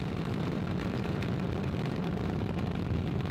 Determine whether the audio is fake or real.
fake